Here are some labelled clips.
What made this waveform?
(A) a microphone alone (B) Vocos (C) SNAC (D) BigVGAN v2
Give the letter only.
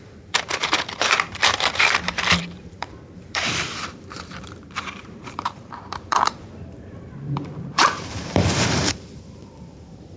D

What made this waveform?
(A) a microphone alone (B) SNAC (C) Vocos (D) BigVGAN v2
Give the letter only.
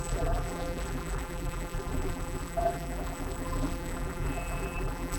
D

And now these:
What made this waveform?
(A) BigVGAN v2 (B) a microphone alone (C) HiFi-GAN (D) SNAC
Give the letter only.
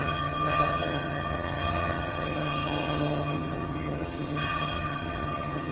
C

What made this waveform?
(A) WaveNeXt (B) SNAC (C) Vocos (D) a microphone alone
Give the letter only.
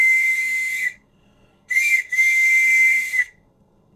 B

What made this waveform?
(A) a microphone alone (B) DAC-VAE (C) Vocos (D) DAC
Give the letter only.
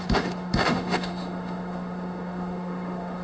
B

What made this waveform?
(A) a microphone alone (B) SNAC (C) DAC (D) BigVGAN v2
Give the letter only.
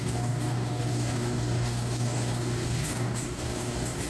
C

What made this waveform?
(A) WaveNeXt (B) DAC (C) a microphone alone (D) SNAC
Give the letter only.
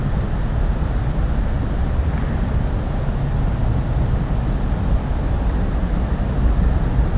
C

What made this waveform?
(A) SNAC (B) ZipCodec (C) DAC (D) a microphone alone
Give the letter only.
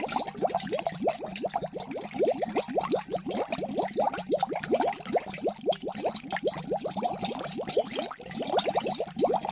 D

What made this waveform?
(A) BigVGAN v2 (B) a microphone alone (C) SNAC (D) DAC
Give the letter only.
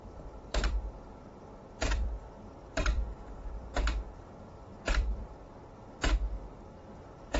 A